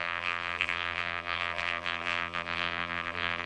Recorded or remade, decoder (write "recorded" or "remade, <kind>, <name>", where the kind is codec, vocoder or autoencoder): remade, vocoder, BigVGAN v2